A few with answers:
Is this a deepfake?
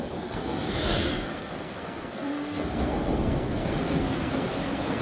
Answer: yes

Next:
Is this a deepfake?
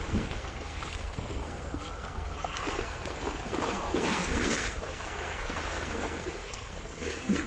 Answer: yes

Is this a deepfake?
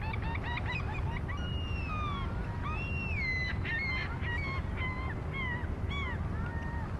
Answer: no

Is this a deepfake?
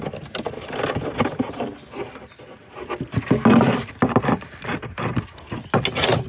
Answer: no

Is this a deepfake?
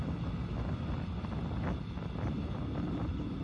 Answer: no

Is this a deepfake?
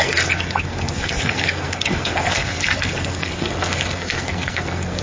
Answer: yes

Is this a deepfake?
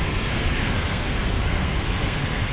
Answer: yes